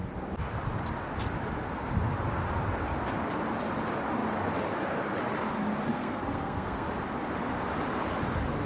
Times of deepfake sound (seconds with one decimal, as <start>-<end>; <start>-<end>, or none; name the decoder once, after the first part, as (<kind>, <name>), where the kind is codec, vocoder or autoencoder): 5.9-6.9 (codec, SNAC)